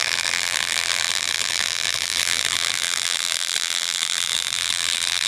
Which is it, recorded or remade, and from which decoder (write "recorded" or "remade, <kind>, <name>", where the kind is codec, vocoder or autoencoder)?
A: remade, vocoder, BigVGAN v2